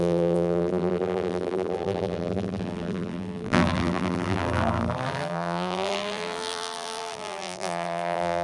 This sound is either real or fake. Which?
fake